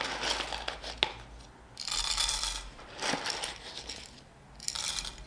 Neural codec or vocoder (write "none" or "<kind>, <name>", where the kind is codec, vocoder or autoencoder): none